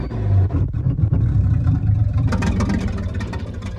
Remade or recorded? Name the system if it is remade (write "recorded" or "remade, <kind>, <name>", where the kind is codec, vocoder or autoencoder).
remade, vocoder, BigVGAN v2